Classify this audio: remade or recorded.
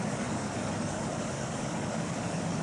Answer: remade